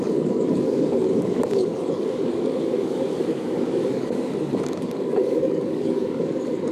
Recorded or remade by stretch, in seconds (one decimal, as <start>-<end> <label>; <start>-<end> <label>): 0.0-6.7 remade